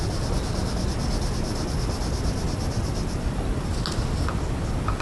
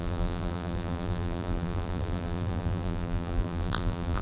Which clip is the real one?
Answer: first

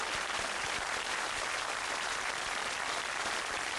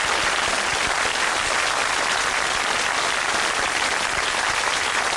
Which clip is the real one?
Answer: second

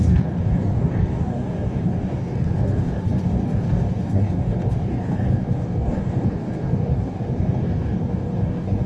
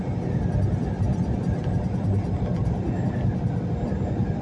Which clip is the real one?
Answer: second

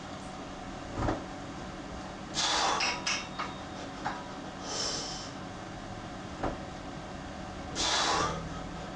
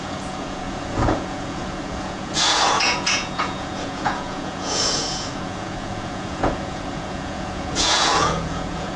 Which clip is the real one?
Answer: first